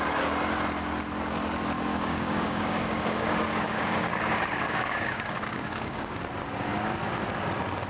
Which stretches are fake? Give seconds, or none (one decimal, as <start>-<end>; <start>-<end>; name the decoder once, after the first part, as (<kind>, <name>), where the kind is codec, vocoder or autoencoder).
1.9-6.2 (codec, DAC)